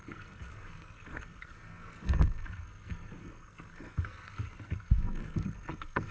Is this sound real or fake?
fake